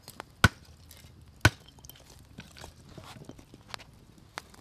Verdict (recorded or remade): recorded